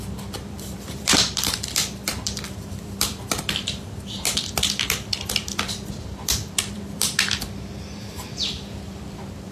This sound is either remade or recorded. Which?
remade